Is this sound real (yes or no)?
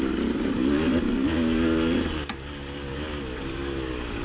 yes